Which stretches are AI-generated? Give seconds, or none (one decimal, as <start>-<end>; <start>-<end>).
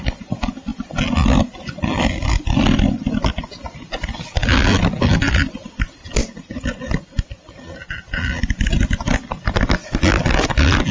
none